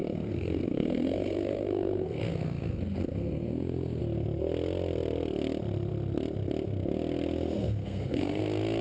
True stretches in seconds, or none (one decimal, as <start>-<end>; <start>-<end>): 4.0-7.6; 8.4-8.8

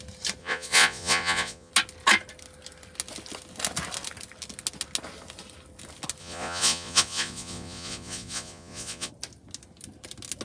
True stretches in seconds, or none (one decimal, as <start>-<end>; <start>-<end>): 0.0-0.4; 1.7-6.2; 9.1-10.4